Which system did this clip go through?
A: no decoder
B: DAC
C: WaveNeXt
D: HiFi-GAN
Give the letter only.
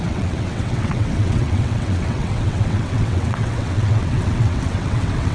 C